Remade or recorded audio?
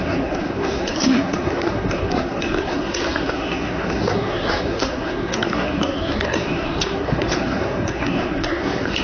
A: remade